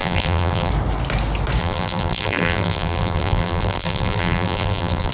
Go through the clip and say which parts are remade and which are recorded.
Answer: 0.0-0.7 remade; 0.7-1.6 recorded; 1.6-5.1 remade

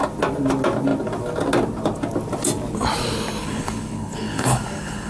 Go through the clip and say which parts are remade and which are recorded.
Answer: 0.0-3.4 recorded; 3.4-5.1 remade